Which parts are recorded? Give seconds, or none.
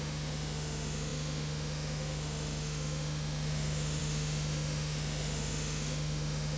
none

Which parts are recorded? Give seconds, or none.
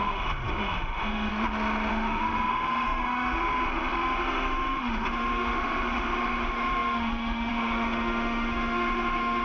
1.3-1.9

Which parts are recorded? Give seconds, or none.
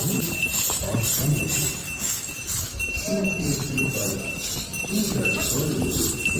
0.0-1.8; 2.9-6.4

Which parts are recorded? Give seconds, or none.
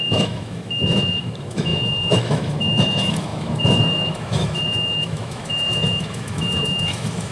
none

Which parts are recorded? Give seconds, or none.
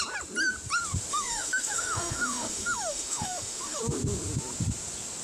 0.0-1.1; 3.8-5.2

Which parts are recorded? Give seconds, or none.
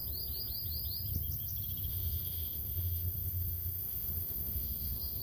0.0-1.9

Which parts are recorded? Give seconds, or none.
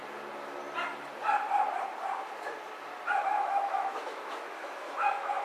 0.0-3.2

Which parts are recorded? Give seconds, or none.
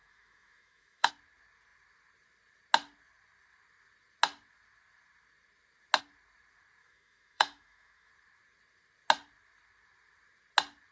1.1-6.8; 8.1-10.9